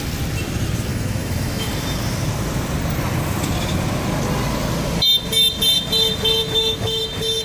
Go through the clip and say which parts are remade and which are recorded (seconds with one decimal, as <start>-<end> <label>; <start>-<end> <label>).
0.0-0.9 recorded; 0.9-1.7 remade; 1.7-6.4 recorded; 6.4-7.0 remade; 7.0-7.4 recorded